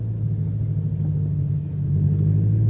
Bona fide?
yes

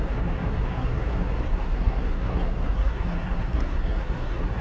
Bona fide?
no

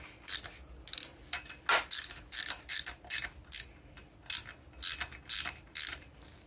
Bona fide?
yes